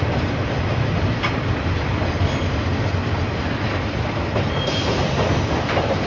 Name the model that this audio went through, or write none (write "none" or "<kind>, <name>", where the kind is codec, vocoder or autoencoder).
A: none